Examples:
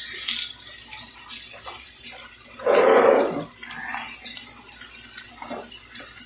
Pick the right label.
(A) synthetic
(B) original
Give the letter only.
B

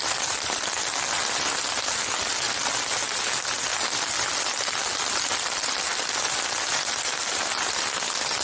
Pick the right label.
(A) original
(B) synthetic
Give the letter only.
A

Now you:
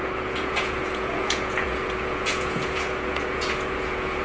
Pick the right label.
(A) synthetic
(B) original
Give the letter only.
A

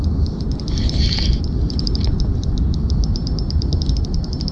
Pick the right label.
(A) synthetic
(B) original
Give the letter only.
B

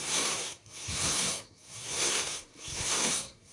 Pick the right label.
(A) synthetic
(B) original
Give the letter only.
A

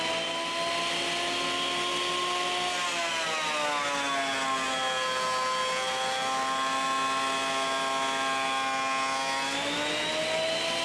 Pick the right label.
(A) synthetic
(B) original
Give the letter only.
B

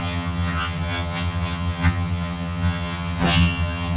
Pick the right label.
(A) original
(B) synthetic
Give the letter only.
B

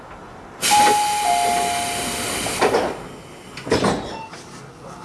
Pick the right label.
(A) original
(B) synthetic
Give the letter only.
A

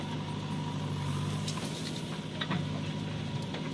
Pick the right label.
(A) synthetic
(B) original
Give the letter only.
B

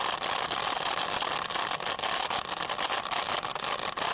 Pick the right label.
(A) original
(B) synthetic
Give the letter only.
A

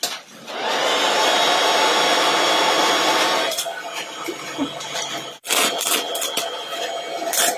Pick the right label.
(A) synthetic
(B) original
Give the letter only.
B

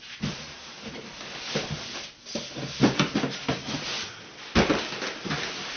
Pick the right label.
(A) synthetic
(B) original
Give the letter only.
B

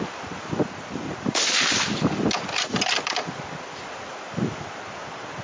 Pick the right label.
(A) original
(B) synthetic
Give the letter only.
B